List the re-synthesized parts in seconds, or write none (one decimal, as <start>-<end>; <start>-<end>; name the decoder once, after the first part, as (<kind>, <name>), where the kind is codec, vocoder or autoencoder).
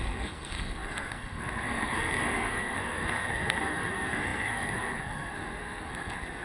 0.0-6.4 (codec, SNAC)